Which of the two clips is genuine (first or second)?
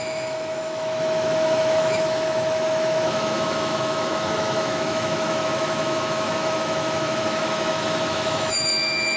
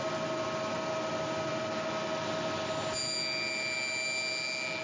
second